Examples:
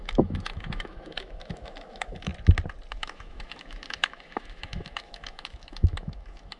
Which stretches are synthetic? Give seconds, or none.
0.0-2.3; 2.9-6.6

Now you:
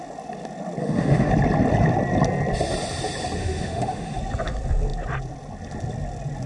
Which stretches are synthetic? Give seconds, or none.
0.8-1.3; 3.4-4.2

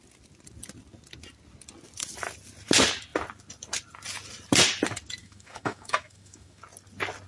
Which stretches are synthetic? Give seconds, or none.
5.2-6.6